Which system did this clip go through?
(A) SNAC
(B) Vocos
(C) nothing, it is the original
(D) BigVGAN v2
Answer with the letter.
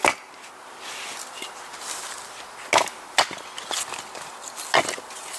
C